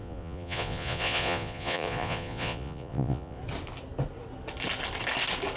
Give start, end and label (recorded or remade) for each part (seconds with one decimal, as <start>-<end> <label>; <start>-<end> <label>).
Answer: 0.0-3.4 remade; 3.4-5.6 recorded